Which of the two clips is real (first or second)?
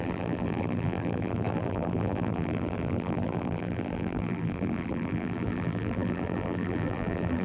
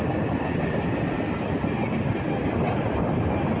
second